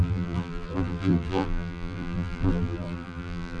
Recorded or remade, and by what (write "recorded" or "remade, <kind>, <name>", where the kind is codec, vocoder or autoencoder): remade, vocoder, BigVGAN v2